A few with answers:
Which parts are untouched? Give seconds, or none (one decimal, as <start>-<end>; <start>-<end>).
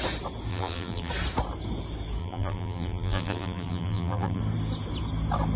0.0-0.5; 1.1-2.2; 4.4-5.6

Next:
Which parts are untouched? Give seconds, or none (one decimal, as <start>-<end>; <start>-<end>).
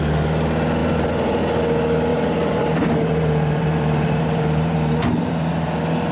0.0-0.8; 1.4-2.1; 5.5-6.1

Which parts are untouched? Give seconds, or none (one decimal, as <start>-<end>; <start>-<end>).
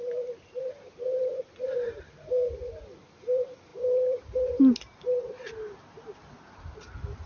0.0-7.3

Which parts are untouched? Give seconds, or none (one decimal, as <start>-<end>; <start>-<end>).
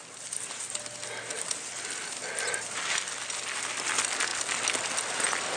0.0-4.3